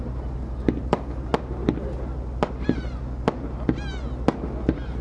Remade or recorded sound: recorded